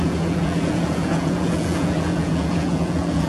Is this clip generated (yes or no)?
yes